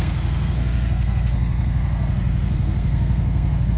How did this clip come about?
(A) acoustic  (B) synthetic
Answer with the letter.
B